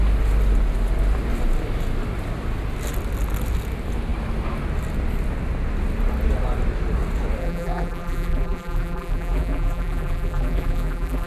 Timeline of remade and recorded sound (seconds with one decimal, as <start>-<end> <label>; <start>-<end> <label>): 0.0-7.4 recorded; 7.4-11.3 remade